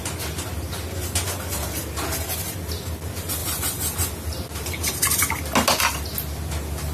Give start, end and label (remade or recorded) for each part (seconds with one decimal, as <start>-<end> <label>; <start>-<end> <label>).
0.0-6.9 recorded